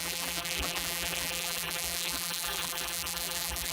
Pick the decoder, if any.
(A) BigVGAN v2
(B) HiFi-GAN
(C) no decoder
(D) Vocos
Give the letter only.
A